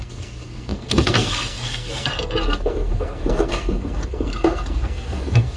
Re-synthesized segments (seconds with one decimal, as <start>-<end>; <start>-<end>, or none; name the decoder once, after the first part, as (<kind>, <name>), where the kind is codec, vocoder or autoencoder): 0.0-5.6 (codec, SNAC)